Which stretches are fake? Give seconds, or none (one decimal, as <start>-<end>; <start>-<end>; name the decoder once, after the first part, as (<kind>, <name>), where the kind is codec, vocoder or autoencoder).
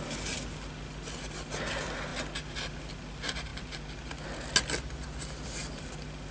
none